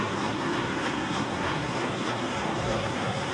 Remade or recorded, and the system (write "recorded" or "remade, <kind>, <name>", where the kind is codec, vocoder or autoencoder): remade, codec, SNAC